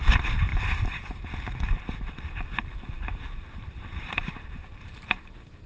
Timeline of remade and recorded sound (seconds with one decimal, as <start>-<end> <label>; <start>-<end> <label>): 0.0-0.5 remade; 0.5-2.1 recorded; 2.1-5.7 remade